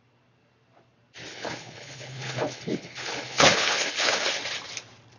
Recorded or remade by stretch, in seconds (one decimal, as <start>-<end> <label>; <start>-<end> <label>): 0.0-1.3 recorded; 1.3-4.3 remade; 4.3-5.2 recorded